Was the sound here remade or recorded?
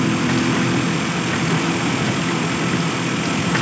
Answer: recorded